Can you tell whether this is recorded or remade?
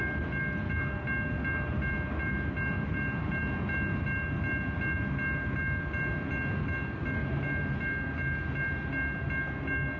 recorded